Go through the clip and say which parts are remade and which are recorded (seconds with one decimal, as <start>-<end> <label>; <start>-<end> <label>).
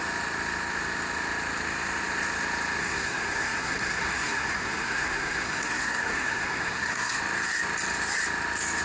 0.0-2.8 recorded; 2.8-7.2 remade; 7.2-8.8 recorded